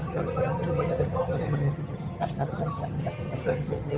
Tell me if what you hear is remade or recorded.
remade